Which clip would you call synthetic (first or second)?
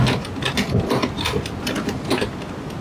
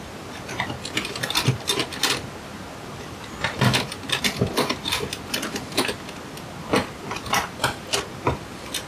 second